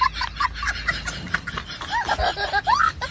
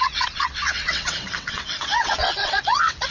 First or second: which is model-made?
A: second